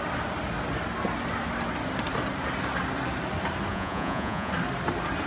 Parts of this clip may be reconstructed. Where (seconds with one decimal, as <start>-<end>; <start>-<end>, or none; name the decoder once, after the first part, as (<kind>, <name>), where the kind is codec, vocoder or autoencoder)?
3.7-4.5 (vocoder, Vocos)